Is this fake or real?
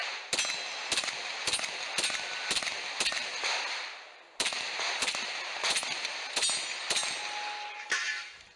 real